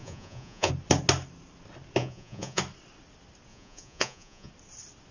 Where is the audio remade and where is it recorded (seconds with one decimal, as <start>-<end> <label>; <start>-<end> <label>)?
0.0-0.7 remade; 0.7-2.0 recorded; 2.0-2.6 remade; 2.6-3.5 recorded; 3.5-4.5 remade; 4.5-5.1 recorded